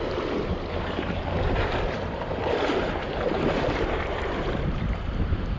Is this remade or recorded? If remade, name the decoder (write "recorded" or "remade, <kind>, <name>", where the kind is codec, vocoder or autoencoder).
remade, vocoder, BigVGAN v2